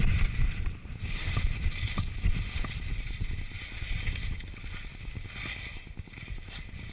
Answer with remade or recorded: recorded